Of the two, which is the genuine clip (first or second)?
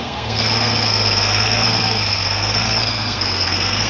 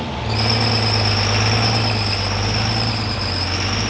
second